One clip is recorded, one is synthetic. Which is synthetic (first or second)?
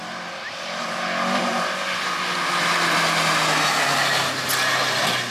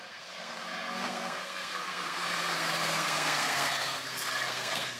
second